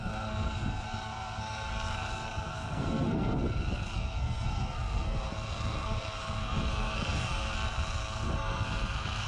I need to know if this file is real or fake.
fake